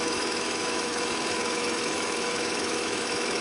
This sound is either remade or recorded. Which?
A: remade